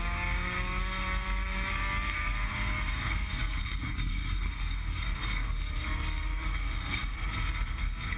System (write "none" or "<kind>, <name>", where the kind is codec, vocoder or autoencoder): codec, DAC